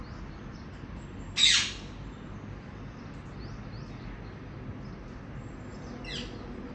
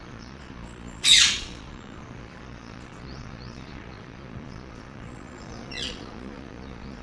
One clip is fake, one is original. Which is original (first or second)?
first